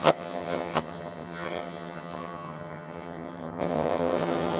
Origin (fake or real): fake